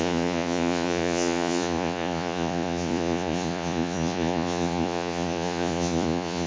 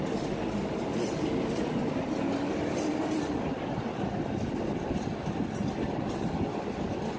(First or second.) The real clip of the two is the second